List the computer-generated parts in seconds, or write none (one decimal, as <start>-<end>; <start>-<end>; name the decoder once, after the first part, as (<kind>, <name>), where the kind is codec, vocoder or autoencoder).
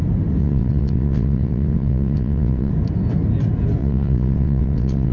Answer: 0.4-2.7 (vocoder, WaveNeXt); 3.8-5.1